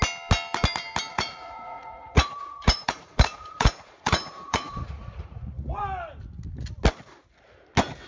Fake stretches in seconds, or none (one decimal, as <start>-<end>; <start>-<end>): 1.1-5.8